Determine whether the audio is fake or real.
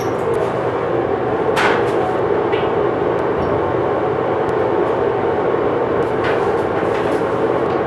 real